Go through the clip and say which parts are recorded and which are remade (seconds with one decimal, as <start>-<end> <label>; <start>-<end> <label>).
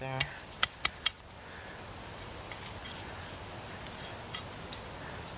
0.0-2.8 recorded; 2.8-3.4 remade; 3.4-5.4 recorded